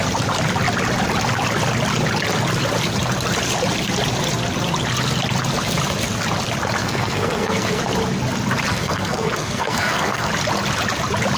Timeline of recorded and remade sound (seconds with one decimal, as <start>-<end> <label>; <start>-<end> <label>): 0.0-6.8 recorded; 6.8-7.8 remade; 7.8-8.7 recorded; 8.7-10.3 remade; 10.3-11.4 recorded